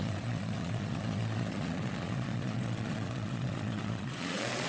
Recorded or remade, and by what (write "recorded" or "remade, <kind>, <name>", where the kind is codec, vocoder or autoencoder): remade, vocoder, Vocos